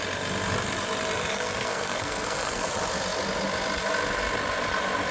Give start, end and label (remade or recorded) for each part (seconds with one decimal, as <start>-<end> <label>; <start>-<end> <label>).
0.0-1.3 recorded; 1.3-2.7 remade; 2.7-5.1 recorded